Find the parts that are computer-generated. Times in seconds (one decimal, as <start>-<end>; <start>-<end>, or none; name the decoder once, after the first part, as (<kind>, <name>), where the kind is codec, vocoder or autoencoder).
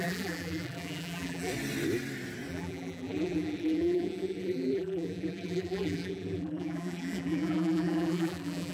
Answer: 0.0-1.5 (vocoder, BigVGAN v2); 2.5-8.7